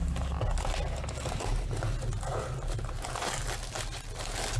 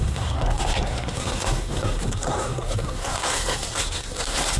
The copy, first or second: second